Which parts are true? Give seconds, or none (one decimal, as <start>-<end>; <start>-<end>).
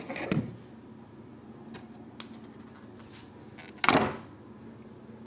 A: 0.0-5.3